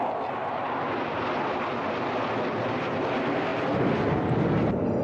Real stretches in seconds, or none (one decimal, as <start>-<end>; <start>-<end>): 0.0-5.0